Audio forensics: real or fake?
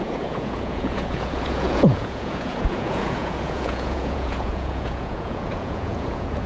fake